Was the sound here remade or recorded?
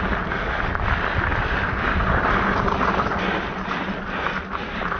recorded